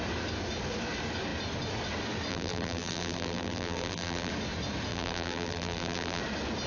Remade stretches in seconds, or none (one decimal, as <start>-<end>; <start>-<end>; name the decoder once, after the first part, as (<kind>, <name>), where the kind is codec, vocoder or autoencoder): 2.3-4.3 (vocoder, BigVGAN v2); 4.9-6.2